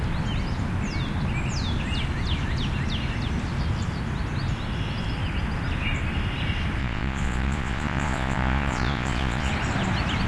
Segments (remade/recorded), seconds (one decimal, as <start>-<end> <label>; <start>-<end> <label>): 0.0-6.8 recorded; 6.8-9.5 remade; 9.5-10.3 recorded